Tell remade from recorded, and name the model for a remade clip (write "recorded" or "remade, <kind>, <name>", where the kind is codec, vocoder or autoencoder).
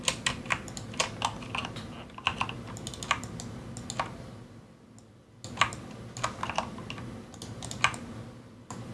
recorded